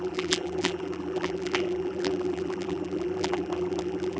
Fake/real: fake